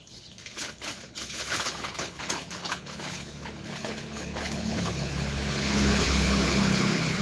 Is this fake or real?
fake